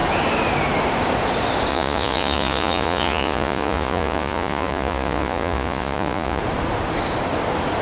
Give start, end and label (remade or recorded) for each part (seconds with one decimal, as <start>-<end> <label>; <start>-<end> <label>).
0.0-1.7 recorded; 1.7-6.4 remade; 6.4-7.8 recorded